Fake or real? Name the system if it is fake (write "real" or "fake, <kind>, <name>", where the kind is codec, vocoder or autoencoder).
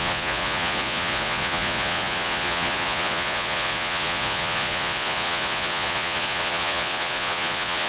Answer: fake, vocoder, Vocos